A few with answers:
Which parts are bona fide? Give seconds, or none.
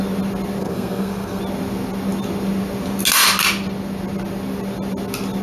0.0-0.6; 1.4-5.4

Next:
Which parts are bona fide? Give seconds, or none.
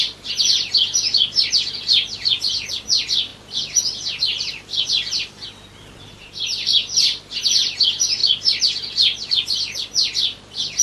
0.0-10.8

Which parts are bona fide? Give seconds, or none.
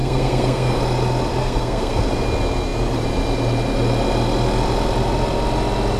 0.8-1.4; 2.1-6.0